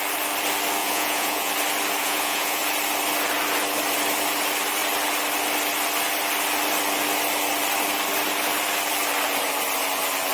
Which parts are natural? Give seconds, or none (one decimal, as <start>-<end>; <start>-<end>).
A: 0.0-0.8; 1.5-2.0; 2.6-10.3